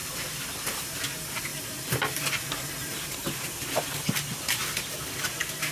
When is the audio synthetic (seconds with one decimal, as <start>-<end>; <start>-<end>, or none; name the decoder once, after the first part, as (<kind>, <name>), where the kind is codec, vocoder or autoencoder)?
1.5-3.4 (vocoder, BigVGAN v2)